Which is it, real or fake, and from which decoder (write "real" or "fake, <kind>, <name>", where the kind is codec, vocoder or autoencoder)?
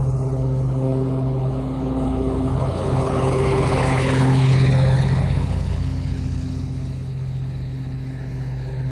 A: fake, codec, HILCodec